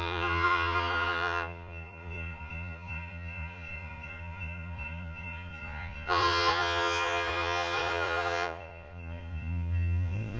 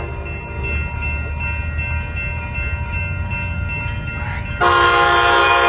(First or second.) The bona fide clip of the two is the second